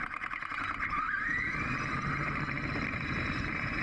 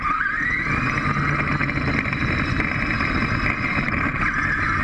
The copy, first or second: first